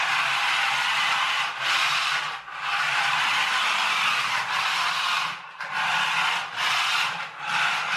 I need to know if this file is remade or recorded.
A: recorded